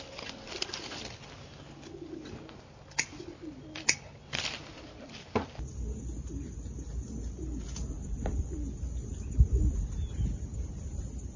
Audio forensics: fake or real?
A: real